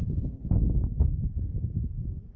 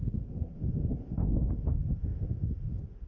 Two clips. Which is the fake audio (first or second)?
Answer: second